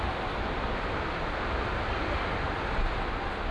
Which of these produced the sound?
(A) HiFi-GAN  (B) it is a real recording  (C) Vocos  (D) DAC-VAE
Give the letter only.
B